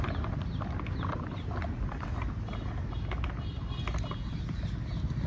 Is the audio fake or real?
real